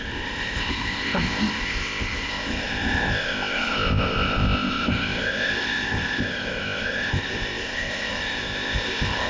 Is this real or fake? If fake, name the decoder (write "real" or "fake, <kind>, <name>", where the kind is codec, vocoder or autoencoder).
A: fake, codec, ZipCodec